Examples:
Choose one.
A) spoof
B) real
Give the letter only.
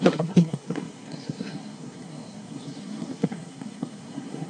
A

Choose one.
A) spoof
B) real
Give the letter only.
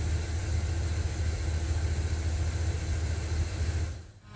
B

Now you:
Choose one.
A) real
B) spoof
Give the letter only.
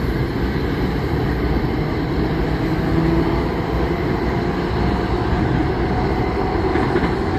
A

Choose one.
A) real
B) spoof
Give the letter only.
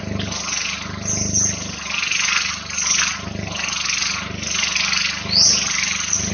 A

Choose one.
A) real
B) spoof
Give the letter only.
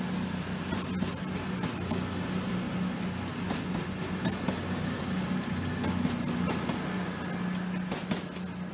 A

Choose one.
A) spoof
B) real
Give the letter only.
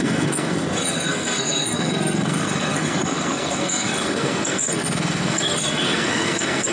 A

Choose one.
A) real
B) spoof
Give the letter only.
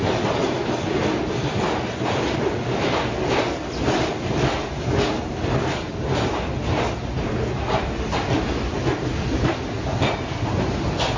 A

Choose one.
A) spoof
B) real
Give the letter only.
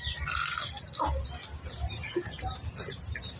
B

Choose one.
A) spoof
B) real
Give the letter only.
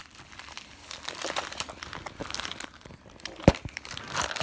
A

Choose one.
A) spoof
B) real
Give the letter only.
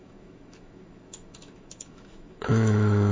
A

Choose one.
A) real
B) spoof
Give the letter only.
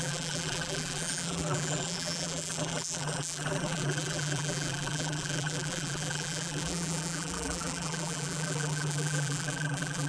B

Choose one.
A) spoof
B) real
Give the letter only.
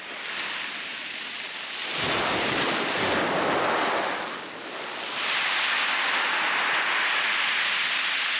B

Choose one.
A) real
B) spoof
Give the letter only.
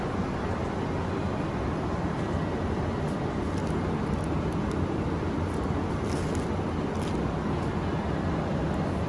A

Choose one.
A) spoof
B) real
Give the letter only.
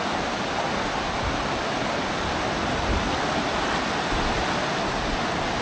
B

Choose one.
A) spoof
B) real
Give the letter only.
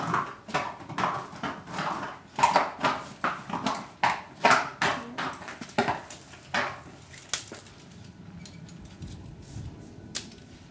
B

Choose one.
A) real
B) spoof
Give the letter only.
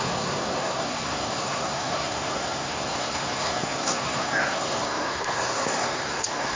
B